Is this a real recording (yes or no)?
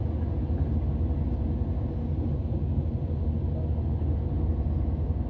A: yes